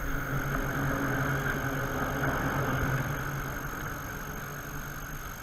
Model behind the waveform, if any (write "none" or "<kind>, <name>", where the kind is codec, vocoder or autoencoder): none